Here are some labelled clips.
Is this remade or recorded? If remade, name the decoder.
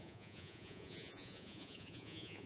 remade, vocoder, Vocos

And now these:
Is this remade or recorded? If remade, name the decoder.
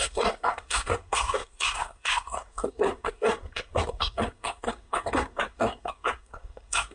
remade, codec, SNAC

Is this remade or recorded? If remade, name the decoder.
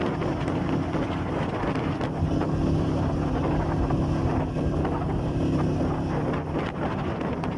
recorded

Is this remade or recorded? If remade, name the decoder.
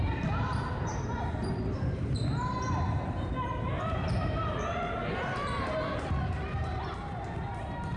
remade, vocoder, BigVGAN v2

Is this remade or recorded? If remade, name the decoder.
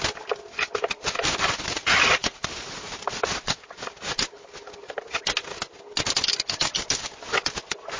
recorded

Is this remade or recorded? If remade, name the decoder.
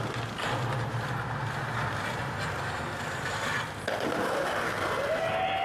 recorded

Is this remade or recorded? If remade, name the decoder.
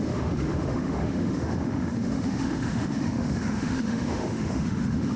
remade, autoencoder, DAC-VAE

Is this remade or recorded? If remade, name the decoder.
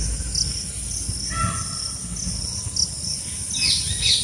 recorded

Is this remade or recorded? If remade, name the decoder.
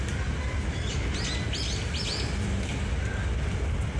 recorded